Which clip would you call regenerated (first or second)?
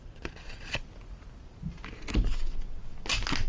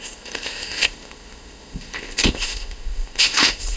second